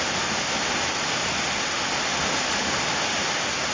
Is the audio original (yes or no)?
yes